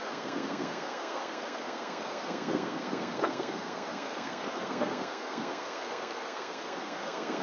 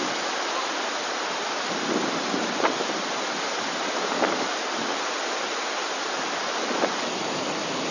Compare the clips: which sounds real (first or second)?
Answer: second